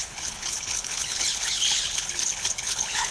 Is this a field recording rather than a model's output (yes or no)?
no